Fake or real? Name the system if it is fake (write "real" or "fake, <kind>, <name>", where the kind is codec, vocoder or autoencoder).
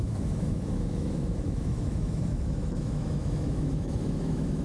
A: fake, autoencoder, DAC-VAE